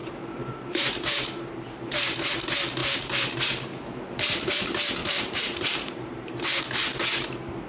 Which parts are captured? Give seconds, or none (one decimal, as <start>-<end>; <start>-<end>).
2.2-5.0; 6.6-7.7